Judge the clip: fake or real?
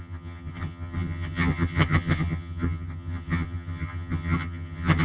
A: fake